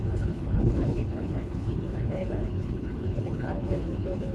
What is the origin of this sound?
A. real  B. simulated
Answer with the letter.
B